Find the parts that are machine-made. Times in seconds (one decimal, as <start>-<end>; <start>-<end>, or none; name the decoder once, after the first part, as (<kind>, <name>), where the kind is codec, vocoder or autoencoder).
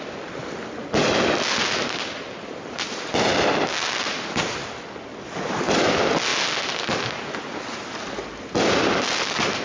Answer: none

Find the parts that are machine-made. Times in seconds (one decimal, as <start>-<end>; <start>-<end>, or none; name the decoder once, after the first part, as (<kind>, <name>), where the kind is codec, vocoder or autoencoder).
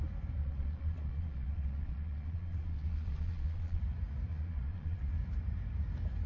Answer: 0.4-3.8 (vocoder, Vocos); 4.3-5.1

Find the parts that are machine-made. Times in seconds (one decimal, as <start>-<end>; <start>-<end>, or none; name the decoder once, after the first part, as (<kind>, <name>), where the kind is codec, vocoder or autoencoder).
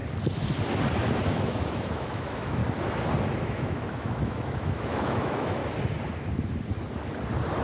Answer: 1.3-2.6 (autoencoder, DAC-VAE); 3.4-5.6